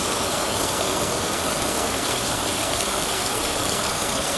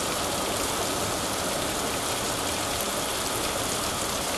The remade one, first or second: first